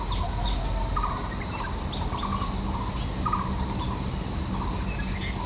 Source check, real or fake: real